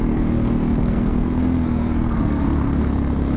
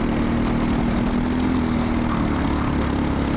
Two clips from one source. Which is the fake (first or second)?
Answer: first